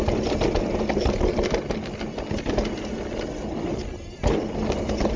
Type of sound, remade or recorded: recorded